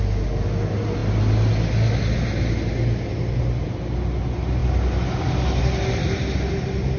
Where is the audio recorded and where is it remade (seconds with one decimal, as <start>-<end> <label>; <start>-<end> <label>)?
0.0-7.0 recorded

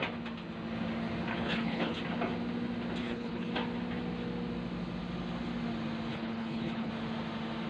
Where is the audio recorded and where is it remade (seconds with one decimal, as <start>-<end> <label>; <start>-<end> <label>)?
0.0-1.3 recorded; 1.3-2.0 remade; 2.0-3.0 recorded; 3.0-3.5 remade; 3.5-6.1 recorded; 6.1-6.9 remade; 6.9-7.7 recorded

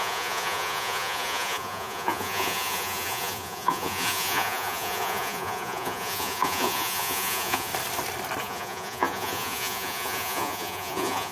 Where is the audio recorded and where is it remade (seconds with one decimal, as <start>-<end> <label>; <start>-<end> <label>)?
0.0-7.7 remade; 7.7-8.4 recorded; 8.4-11.3 remade

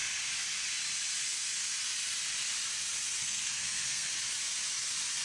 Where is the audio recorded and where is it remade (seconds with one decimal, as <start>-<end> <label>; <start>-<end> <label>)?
0.0-3.2 recorded; 3.2-4.1 remade; 4.1-5.2 recorded

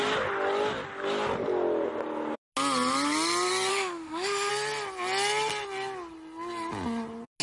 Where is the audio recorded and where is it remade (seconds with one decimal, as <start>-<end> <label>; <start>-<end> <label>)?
0.0-3.7 recorded; 3.7-4.5 remade; 4.5-7.4 recorded

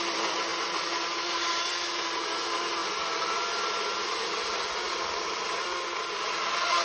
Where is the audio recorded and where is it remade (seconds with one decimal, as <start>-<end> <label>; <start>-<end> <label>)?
0.0-6.8 recorded

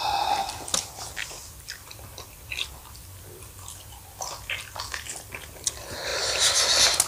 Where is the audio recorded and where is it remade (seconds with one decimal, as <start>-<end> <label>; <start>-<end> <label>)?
0.0-7.1 recorded

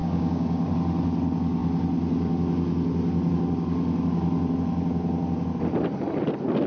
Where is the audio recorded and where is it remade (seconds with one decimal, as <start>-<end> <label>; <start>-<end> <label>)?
0.0-0.7 remade; 0.7-6.7 recorded